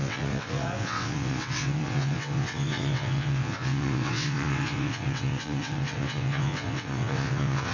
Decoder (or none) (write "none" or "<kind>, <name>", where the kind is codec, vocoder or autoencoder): vocoder, WaveNeXt